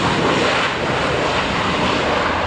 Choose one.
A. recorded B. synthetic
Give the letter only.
A